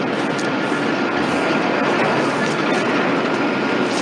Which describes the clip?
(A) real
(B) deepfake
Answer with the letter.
A